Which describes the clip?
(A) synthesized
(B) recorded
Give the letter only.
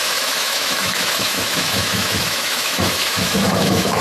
A